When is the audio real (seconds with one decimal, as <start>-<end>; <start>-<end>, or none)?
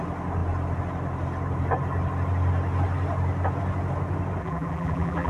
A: 0.0-4.4